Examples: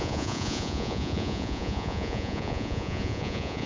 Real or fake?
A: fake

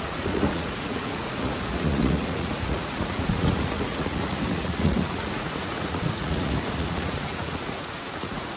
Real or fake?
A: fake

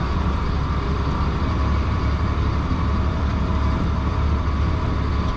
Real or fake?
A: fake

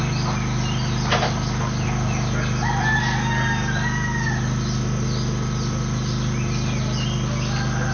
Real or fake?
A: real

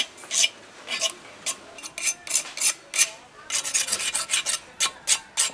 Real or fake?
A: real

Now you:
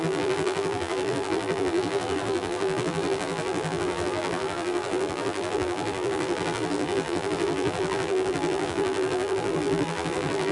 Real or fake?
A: fake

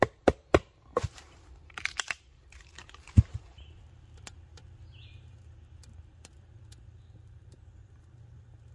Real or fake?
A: fake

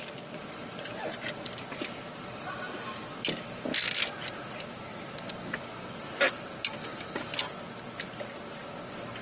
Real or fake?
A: real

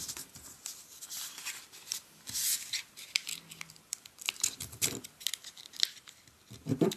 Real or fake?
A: fake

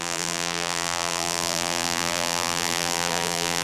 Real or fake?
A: fake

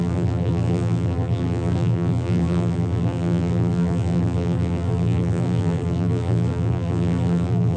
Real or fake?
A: fake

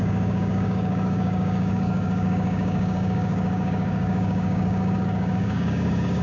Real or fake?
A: fake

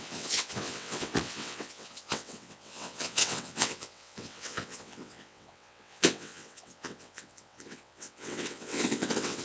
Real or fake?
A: fake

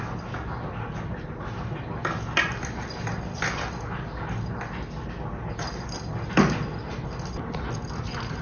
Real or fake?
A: real